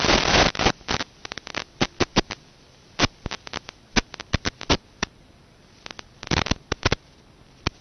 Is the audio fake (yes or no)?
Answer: no